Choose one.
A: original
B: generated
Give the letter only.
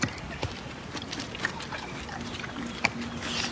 A